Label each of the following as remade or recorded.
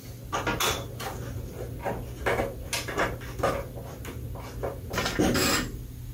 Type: recorded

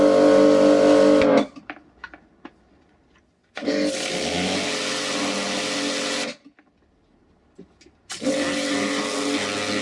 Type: recorded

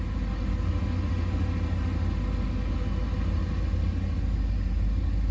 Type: recorded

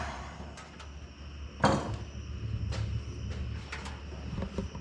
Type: recorded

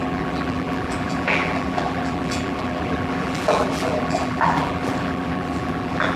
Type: remade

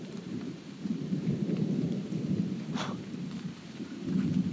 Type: remade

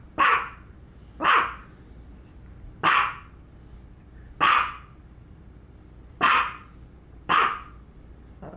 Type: recorded